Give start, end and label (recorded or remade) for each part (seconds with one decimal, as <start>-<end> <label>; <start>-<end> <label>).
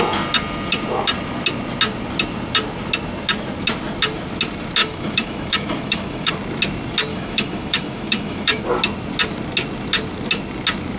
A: 0.0-4.8 recorded; 4.8-6.3 remade; 6.3-7.1 recorded; 7.1-8.6 remade; 8.6-11.0 recorded